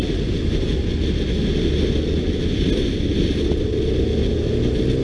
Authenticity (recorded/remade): recorded